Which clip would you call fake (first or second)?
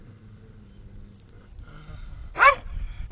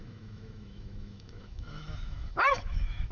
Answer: second